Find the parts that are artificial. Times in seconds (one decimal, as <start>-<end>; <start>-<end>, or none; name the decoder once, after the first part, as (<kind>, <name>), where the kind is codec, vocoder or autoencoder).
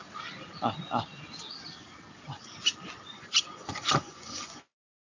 3.1-5.2 (vocoder, Vocos)